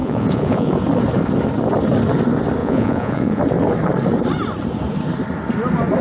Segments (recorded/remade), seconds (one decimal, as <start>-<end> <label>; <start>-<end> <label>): 0.0-0.7 remade; 0.7-2.6 recorded; 2.6-3.4 remade; 3.4-6.0 recorded